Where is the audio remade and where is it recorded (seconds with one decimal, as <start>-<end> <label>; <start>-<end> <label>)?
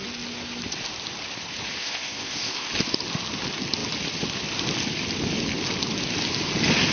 0.0-1.8 recorded; 1.8-2.7 remade; 2.7-6.9 recorded